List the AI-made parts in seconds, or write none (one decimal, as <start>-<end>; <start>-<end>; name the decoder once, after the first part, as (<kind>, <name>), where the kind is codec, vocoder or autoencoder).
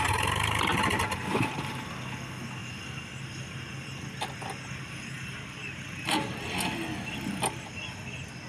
1.2-1.8 (vocoder, BigVGAN v2); 2.6-3.3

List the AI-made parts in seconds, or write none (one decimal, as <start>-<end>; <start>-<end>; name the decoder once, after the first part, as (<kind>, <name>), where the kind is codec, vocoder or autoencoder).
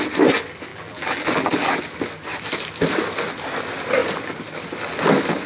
0.7-1.8 (vocoder, BigVGAN v2)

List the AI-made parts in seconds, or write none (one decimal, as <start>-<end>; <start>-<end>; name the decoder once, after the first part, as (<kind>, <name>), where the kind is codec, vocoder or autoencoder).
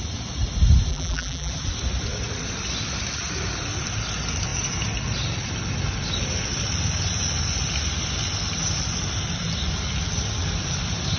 0.9-1.5 (vocoder, BigVGAN v2)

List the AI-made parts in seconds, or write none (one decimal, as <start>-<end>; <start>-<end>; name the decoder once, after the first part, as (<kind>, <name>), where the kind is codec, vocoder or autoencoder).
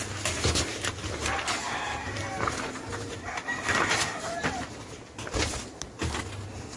0.7-4.8 (vocoder, BigVGAN v2)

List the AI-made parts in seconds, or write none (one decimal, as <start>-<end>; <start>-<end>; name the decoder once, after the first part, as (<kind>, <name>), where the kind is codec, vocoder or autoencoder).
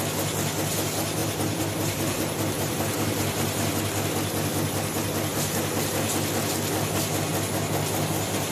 1.2-3.7 (vocoder, BigVGAN v2); 5.3-5.9